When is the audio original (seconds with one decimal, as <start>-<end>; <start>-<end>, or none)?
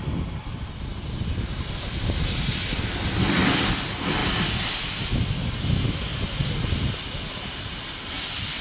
0.9-3.5; 6.1-7.5